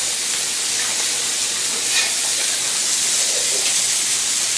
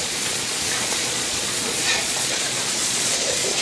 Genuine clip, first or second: first